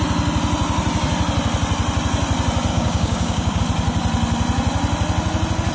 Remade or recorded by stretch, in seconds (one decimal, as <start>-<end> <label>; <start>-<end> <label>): 0.0-2.7 recorded; 2.7-3.6 remade; 3.6-5.7 recorded